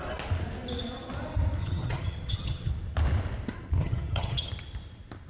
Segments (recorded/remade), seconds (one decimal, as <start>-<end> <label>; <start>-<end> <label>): 0.0-1.6 recorded; 1.6-2.7 remade; 2.7-3.8 recorded; 3.8-4.5 remade; 4.5-5.3 recorded